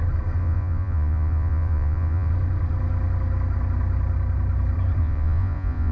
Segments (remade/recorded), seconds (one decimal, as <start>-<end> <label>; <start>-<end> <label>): 0.0-0.4 recorded; 0.4-2.3 remade; 2.3-5.0 recorded; 5.0-5.9 remade